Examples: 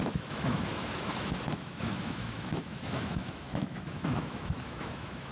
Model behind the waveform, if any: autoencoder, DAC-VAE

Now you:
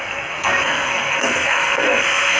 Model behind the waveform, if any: codec, SNAC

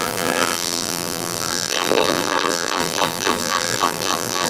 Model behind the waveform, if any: vocoder, BigVGAN v2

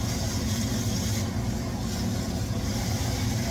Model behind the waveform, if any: none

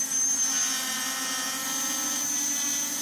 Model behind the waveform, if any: none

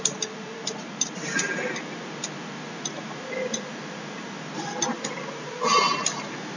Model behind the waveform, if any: none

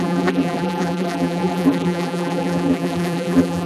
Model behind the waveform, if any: vocoder, BigVGAN v2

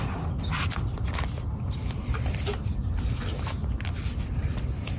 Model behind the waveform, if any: none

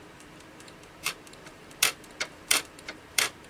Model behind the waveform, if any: vocoder, BigVGAN v2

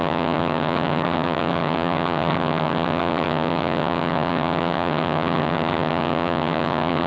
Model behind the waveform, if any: vocoder, HiFi-GAN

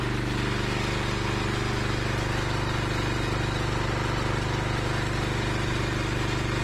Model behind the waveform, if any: none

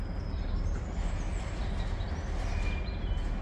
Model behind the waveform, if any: none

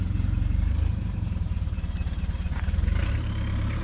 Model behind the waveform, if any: vocoder, BigVGAN v2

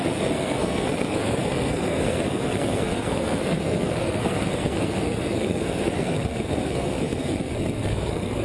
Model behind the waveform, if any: codec, SNAC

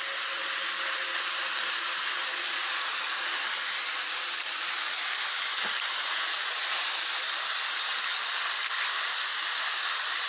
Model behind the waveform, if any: none